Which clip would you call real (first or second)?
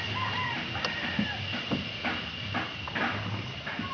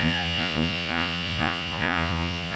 first